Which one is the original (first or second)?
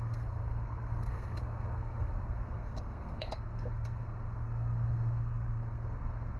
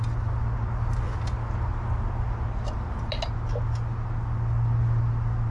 second